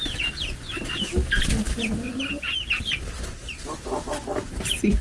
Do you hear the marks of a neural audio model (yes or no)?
no